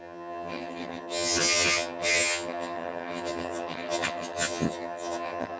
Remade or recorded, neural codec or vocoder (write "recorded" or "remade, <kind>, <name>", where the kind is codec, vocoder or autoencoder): remade, vocoder, HiFi-GAN